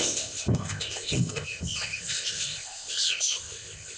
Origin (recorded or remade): remade